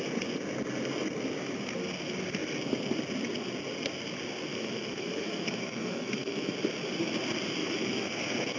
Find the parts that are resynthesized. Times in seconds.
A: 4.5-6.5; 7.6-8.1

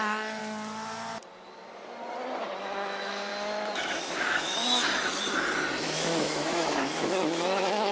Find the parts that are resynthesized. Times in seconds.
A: 0.0-0.4; 2.6-4.8; 5.8-7.9

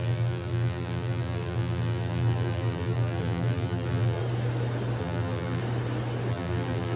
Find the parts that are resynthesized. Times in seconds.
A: 0.0-4.2; 5.0-5.6; 6.3-7.0

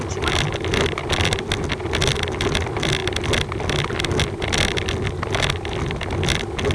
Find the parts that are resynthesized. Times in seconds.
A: none

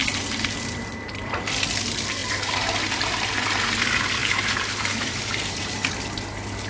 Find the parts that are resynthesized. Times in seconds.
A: 0.0-1.1; 4.2-5.9

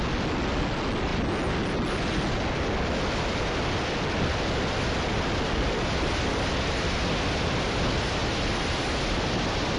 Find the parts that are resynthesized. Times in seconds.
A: none

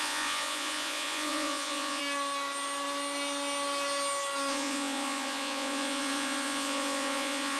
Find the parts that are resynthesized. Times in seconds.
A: 0.0-2.0; 4.5-7.6